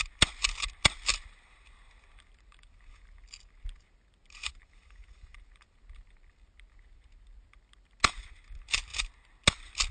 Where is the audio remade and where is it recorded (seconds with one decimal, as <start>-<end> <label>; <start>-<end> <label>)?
0.0-1.1 recorded; 1.1-2.9 remade; 2.9-4.5 recorded; 4.5-6.1 remade; 6.1-9.9 recorded

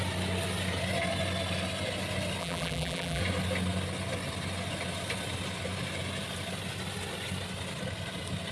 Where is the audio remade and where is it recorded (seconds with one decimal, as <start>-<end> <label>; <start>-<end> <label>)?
0.0-2.4 recorded; 2.4-3.2 remade; 3.2-8.5 recorded

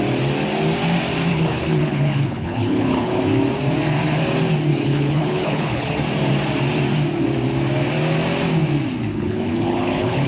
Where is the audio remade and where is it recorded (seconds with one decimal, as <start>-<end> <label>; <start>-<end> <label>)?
0.0-1.3 recorded; 1.3-3.2 remade; 3.2-4.7 recorded; 4.7-6.0 remade; 6.0-9.1 recorded; 9.1-10.3 remade